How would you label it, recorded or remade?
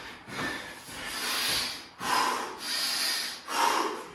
recorded